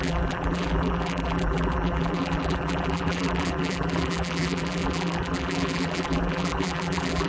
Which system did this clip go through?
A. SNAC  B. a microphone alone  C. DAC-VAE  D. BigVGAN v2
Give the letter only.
D